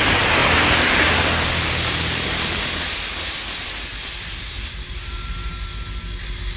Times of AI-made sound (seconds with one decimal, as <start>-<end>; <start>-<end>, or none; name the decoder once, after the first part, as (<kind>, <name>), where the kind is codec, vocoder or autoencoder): none